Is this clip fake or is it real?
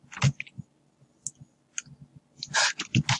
real